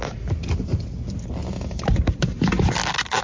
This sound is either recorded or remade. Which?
recorded